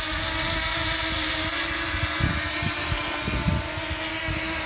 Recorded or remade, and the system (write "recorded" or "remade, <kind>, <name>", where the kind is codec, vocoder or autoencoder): recorded